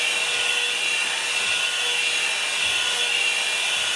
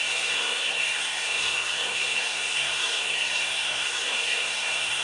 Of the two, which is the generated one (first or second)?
second